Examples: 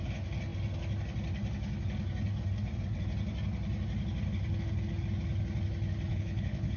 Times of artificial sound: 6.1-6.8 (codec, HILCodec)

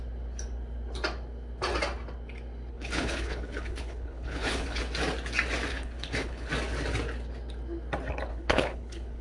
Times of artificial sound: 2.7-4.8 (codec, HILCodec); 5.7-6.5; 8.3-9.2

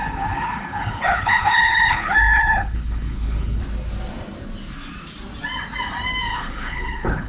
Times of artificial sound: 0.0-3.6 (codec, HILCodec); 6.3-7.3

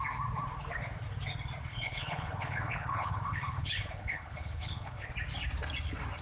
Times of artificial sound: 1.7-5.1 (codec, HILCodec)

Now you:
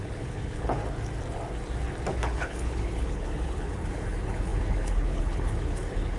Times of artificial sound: 0.0-0.8 (codec, HILCodec); 2.1-6.2

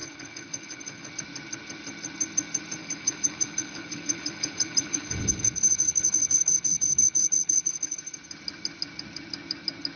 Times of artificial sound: 0.0-1.1 (codec, HILCodec); 2.8-8.0

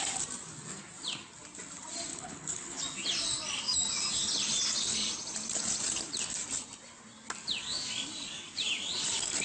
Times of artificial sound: 2.1-2.8 (codec, HILCodec)